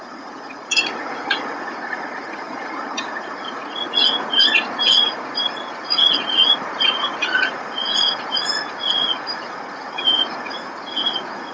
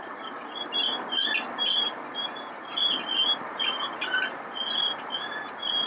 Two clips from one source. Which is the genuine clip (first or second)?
second